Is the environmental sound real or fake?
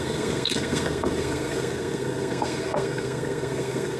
fake